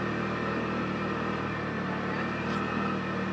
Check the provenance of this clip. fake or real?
real